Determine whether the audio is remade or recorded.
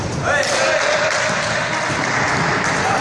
recorded